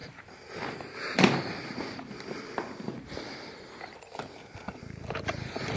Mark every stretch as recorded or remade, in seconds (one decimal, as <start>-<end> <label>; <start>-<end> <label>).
0.0-1.6 remade; 1.6-5.8 recorded